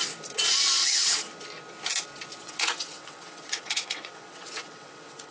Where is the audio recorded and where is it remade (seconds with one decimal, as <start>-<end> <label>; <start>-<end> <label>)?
0.0-0.8 recorded; 0.8-1.3 remade; 1.3-2.4 recorded; 2.4-5.3 remade